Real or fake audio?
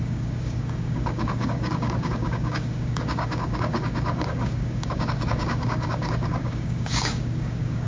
fake